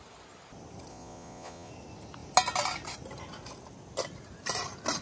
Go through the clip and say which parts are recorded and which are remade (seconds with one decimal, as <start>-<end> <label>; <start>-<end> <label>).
0.0-0.9 recorded; 0.9-1.7 remade; 1.7-5.0 recorded